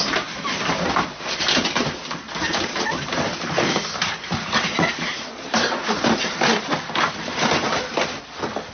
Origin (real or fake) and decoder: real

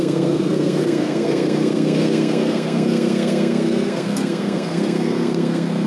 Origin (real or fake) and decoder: fake, codec, SNAC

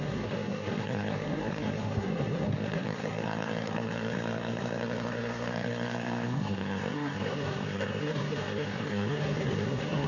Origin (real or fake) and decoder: fake, codec, SNAC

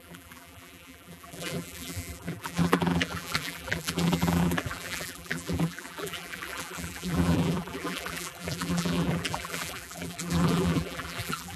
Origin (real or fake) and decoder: fake, vocoder, BigVGAN v2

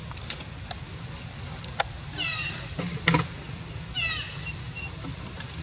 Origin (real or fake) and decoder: real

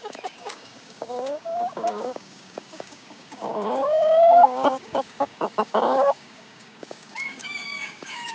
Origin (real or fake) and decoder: fake, codec, DAC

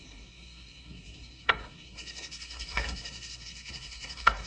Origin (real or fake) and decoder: fake, codec, SNAC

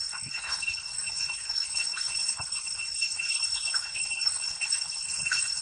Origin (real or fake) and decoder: fake, codec, HILCodec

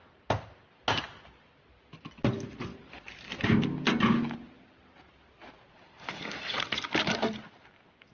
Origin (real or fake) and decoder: real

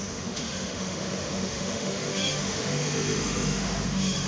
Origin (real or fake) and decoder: fake, autoencoder, DAC-VAE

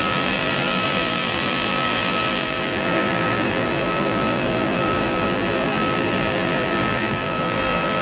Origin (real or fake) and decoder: fake, vocoder, BigVGAN v2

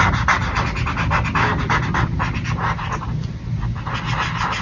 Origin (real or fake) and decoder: real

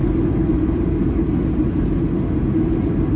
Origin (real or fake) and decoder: real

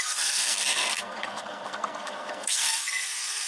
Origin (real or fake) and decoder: fake, codec, SNAC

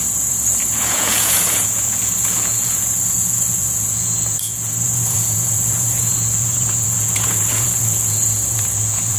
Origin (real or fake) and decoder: fake, vocoder, Vocos